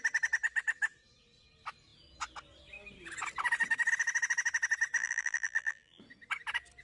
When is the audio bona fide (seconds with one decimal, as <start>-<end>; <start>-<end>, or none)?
0.0-5.0; 6.0-6.8